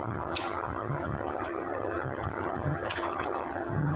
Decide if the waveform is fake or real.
fake